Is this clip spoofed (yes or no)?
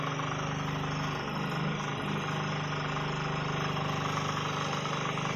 no